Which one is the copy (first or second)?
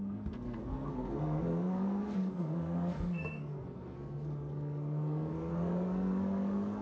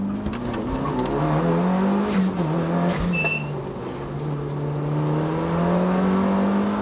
first